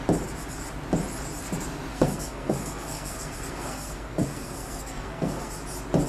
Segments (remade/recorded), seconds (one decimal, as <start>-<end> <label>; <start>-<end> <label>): 0.0-1.9 recorded; 1.9-5.5 remade; 5.5-6.1 recorded